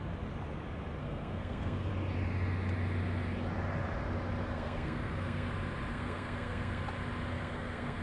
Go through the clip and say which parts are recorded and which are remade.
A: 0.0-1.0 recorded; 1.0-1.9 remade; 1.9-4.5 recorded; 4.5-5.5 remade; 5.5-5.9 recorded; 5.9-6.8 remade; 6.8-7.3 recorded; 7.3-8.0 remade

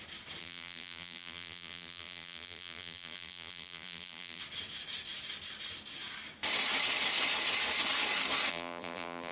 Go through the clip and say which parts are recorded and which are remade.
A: 0.0-0.4 recorded; 0.4-4.4 remade; 4.4-8.5 recorded; 8.5-9.3 remade

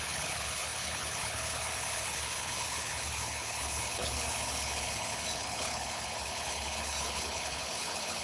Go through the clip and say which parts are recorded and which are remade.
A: 0.0-8.2 remade

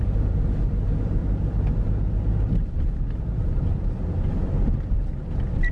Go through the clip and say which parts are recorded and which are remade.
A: 0.0-1.2 recorded; 1.2-3.7 remade; 3.7-5.7 recorded